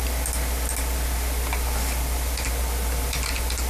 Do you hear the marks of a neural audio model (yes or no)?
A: no